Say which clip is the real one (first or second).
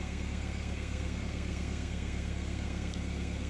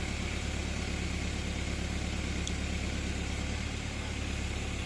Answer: second